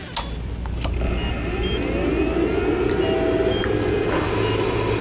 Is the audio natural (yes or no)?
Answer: yes